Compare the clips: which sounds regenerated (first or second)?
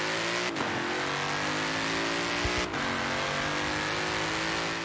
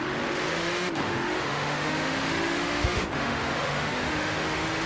second